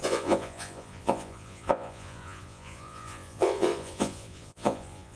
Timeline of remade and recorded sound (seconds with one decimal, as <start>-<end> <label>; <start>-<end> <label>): 0.0-5.2 remade